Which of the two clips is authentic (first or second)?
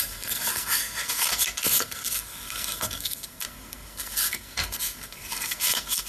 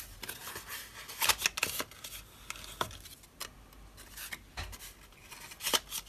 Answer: second